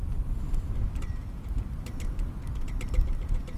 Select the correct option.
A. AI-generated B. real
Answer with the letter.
B